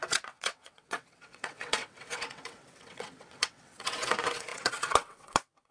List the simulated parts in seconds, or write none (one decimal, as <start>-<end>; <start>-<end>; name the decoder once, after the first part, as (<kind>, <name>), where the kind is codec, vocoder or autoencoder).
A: 0.0-5.7 (vocoder, WaveNeXt)